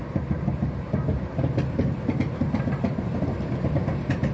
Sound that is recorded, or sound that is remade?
recorded